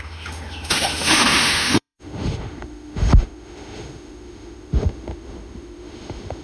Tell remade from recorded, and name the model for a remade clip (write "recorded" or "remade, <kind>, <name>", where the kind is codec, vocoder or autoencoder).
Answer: remade, autoencoder, DAC-VAE